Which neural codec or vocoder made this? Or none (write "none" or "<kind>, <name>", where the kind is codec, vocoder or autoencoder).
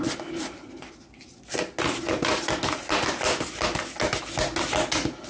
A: none